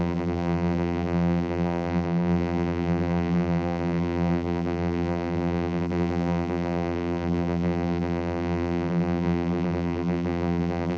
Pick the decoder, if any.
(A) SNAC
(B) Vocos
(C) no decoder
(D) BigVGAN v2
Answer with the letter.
D